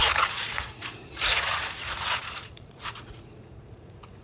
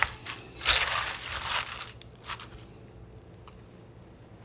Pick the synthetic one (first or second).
first